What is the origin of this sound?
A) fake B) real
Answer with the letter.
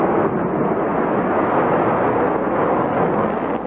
B